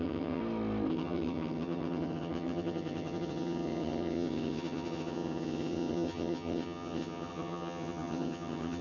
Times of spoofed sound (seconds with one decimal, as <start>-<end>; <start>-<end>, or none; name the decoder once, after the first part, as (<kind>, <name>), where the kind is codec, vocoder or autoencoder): 0.0-0.4 (vocoder, HiFi-GAN); 0.9-8.8